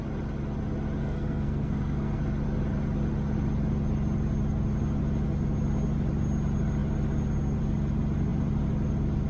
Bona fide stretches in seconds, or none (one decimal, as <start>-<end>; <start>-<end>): 0.0-1.0; 2.2-9.3